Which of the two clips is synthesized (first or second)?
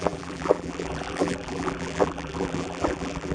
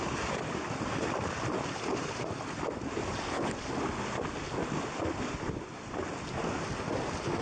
first